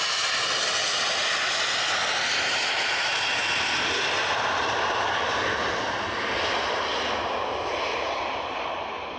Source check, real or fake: real